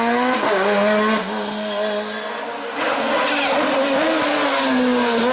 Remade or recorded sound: recorded